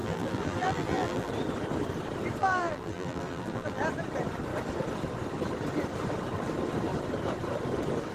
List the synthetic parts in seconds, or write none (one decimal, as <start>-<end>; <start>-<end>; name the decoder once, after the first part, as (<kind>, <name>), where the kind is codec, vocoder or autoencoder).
0.0-1.3 (vocoder, BigVGAN v2); 2.4-3.8